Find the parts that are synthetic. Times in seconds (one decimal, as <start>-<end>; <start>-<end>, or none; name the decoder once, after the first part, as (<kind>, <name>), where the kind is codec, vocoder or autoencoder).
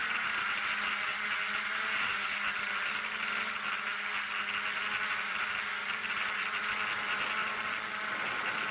7.4-7.9 (vocoder, Vocos)